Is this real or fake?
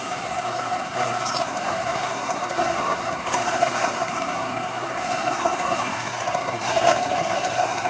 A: fake